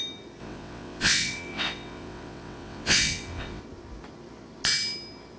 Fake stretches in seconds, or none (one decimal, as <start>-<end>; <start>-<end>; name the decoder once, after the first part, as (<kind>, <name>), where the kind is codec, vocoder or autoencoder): 0.4-3.6 (vocoder, WaveNeXt)